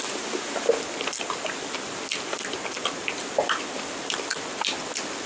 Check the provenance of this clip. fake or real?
real